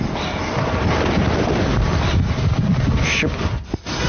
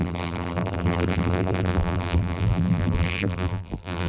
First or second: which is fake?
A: second